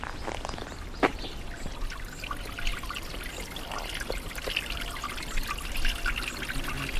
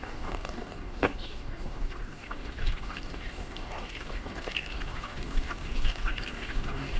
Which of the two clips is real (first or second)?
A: first